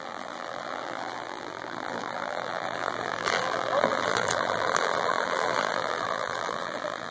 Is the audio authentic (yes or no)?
no